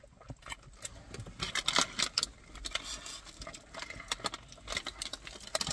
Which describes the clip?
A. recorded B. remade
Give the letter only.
A